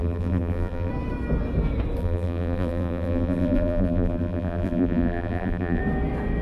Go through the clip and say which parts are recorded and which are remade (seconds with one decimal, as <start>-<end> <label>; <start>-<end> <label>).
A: 0.0-0.9 remade; 0.9-2.0 recorded; 2.0-5.8 remade; 5.8-6.4 recorded